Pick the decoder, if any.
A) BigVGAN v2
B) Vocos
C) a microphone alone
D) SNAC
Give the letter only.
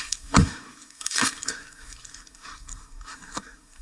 D